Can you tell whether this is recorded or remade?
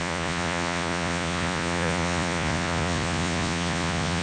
remade